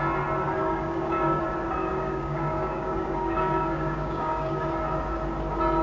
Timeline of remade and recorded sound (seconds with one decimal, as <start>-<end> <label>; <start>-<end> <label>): 0.0-0.6 recorded; 0.6-1.4 remade; 1.4-1.8 recorded; 1.8-4.7 remade; 4.7-5.8 recorded